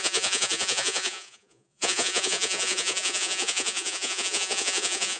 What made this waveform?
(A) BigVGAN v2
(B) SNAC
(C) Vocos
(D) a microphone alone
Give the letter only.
C